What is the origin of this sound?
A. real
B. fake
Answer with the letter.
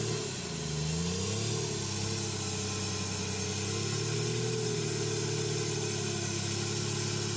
A